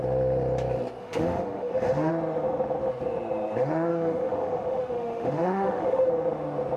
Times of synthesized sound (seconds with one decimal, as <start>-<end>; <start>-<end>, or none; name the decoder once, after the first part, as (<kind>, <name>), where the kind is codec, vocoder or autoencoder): 1.0-2.1 (autoencoder, DAC-VAE); 3.9-6.1